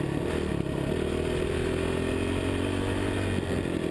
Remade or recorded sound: recorded